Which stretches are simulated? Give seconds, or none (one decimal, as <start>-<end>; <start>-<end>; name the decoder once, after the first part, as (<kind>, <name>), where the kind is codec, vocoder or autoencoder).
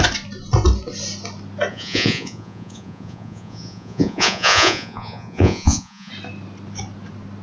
1.7-6.1 (vocoder, Vocos)